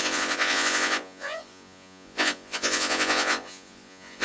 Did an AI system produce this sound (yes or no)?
yes